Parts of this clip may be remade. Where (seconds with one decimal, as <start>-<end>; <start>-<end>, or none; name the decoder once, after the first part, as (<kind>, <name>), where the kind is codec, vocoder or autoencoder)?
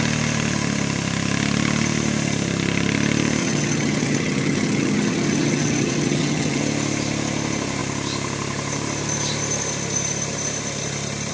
3.4-6.6 (vocoder, HiFi-GAN)